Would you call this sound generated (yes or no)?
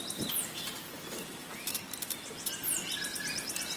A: no